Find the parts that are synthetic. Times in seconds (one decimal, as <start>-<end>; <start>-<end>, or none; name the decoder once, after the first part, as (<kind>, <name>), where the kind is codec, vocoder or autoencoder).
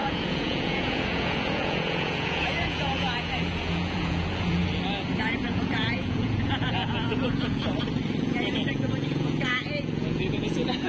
0.0-4.6 (vocoder, Vocos); 5.2-7.6; 8.2-10.9